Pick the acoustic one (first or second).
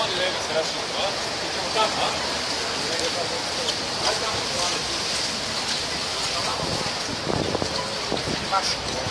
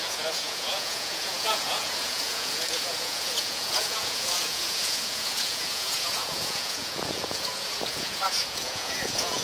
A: first